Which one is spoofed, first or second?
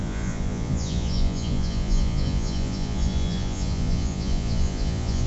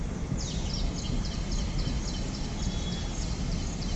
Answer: first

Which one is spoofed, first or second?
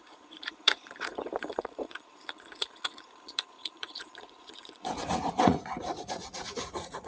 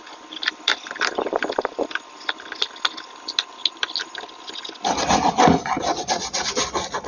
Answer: first